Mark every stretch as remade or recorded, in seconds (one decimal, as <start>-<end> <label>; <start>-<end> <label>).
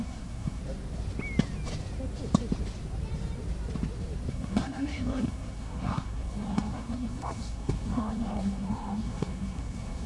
0.0-0.6 remade; 0.6-4.3 recorded; 4.3-10.1 remade